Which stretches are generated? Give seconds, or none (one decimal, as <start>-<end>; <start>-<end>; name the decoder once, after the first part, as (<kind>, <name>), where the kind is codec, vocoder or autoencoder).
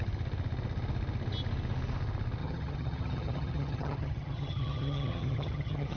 2.4-6.0 (vocoder, HiFi-GAN)